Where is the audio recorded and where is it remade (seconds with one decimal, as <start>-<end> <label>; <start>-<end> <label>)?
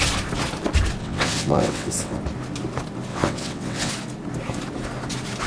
0.0-1.0 recorded; 1.0-2.2 remade; 2.2-3.1 recorded; 3.1-3.9 remade; 3.9-5.5 recorded